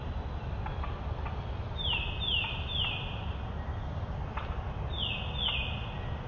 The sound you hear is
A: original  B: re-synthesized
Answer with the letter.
A